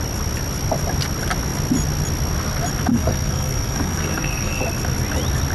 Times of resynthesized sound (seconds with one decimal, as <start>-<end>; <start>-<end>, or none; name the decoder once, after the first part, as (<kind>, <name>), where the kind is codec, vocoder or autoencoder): 2.9-4.6 (codec, SNAC)

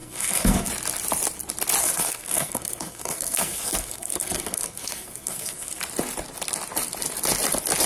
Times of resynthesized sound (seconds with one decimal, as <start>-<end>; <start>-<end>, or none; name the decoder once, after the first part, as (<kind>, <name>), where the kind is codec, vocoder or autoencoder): 0.0-0.7 (codec, SNAC); 1.8-5.8

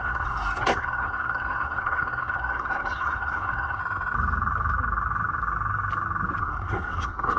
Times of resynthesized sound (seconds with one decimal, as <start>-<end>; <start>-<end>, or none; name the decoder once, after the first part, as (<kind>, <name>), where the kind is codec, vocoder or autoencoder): 0.0-3.8 (codec, SNAC); 6.4-7.4

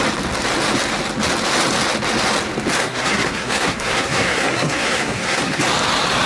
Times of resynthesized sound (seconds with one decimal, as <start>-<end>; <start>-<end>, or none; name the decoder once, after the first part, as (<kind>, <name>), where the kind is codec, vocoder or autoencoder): 2.8-5.6 (codec, SNAC)

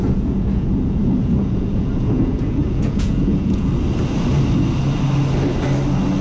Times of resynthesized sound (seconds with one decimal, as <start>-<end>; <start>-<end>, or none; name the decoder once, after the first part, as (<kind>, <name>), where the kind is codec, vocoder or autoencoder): 0.0-3.7 (vocoder, Vocos)

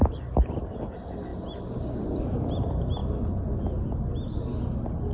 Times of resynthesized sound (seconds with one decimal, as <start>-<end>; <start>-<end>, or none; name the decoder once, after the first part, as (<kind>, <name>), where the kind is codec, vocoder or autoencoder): none